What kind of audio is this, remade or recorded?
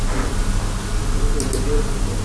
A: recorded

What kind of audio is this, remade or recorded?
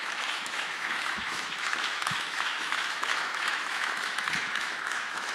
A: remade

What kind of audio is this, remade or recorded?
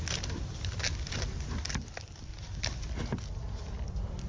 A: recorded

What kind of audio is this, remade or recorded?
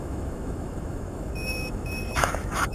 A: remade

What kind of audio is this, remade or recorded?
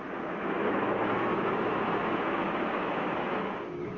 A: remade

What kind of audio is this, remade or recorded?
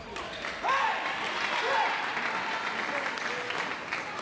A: recorded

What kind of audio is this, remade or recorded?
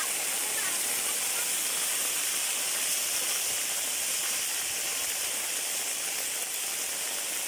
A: recorded